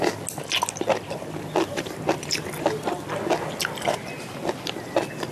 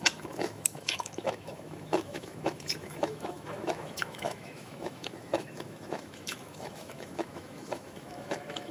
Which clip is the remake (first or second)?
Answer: second